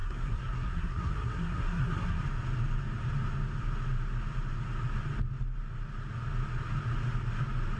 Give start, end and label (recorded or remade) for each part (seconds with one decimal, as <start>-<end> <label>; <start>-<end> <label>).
0.0-2.2 remade; 2.2-7.8 recorded